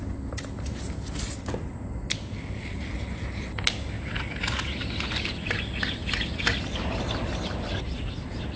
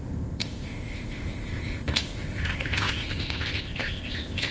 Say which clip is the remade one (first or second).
second